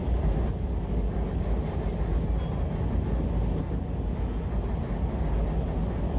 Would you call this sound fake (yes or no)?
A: no